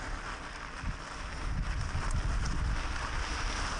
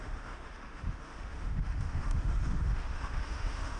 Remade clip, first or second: second